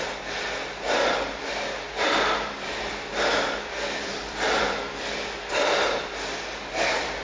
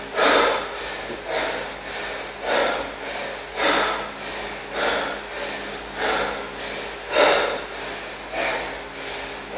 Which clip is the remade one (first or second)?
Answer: first